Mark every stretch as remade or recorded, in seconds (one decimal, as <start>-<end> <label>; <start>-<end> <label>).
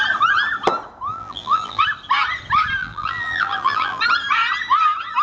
0.0-1.1 recorded; 1.1-1.8 remade; 1.8-2.8 recorded; 2.8-4.0 remade; 4.0-5.2 recorded